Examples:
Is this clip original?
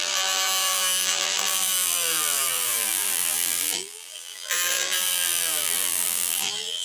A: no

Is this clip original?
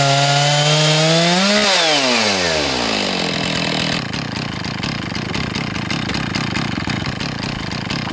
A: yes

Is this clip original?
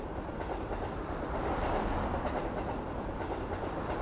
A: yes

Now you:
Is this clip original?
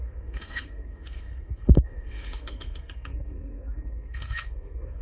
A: no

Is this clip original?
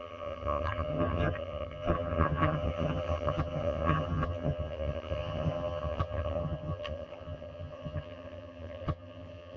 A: no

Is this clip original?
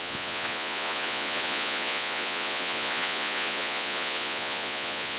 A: no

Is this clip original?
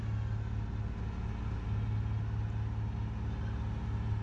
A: yes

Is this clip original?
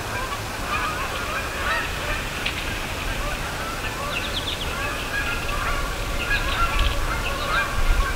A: yes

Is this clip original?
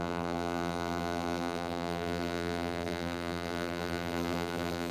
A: no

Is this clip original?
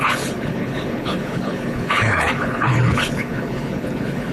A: no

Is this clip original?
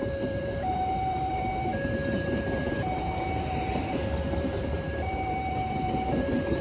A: no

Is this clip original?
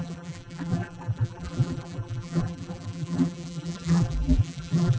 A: no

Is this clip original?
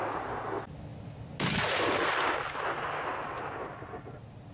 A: yes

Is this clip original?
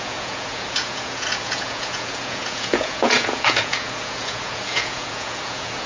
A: no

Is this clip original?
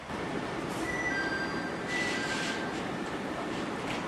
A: no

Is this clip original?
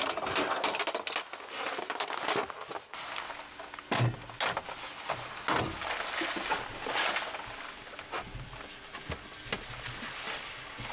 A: yes